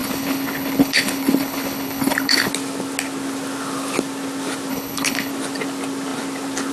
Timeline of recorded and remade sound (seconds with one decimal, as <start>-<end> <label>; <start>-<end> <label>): 0.0-2.5 remade; 2.5-4.7 recorded; 4.7-5.3 remade; 5.3-6.7 recorded